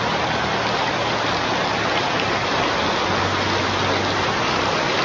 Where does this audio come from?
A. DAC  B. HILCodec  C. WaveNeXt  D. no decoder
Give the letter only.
D